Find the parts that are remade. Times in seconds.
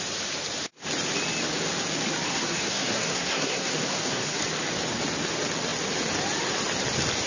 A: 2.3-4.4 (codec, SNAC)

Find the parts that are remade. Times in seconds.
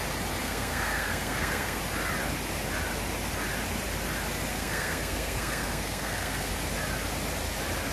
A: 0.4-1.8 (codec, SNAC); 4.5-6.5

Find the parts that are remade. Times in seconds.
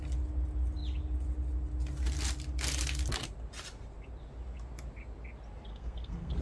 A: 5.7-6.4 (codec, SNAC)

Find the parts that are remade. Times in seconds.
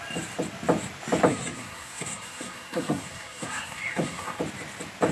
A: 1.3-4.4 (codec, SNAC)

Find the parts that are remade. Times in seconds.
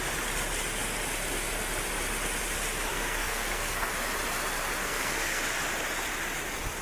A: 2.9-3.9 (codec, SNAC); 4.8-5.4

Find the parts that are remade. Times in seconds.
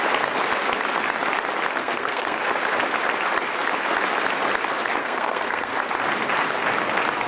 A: 1.8-2.5 (codec, SNAC); 5.0-5.7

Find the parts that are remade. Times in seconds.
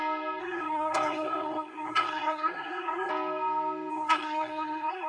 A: 0.4-3.1 (codec, SNAC); 3.9-5.1